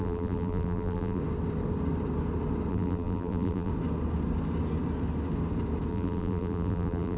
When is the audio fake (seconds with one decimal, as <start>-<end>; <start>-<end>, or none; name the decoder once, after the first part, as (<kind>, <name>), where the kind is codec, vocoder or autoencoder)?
0.0-1.2 (vocoder, BigVGAN v2); 2.7-3.7; 5.9-7.2

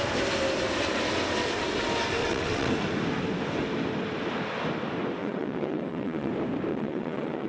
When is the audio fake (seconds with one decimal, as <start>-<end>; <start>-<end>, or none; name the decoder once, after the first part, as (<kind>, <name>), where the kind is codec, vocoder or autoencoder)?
2.2-2.7 (vocoder, WaveNeXt); 5.2-6.3; 6.7-7.5

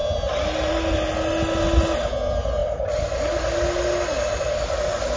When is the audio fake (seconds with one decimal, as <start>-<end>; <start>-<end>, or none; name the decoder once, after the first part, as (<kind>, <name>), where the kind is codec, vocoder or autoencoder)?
none

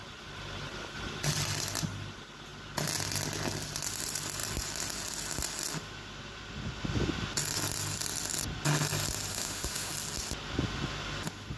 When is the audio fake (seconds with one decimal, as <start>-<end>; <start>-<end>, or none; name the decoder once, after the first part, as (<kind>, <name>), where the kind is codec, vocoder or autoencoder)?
9.3-9.9 (autoencoder, DAC-VAE)

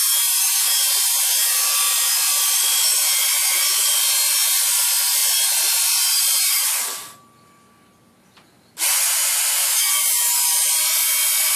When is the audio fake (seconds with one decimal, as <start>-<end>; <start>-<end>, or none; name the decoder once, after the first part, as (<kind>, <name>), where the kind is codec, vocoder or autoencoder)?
none

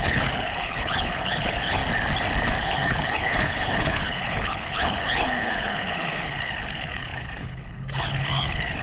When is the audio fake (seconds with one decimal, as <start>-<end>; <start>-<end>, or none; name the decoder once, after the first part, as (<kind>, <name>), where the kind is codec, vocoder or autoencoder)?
0.0-1.8 (codec, HILCodec); 2.6-8.8

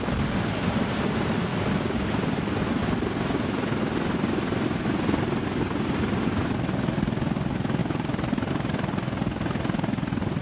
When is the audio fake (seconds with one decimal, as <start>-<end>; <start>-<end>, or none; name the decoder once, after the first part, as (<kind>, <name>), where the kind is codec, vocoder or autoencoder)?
7.8-8.5 (vocoder, BigVGAN v2)

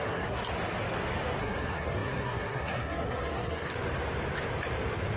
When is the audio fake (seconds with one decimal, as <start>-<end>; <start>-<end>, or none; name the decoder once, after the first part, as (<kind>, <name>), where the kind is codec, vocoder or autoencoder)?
0.0-0.4 (codec, SNAC); 1.4-3.7